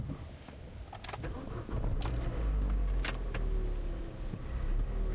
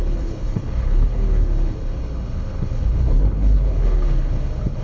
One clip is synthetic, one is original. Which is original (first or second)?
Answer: first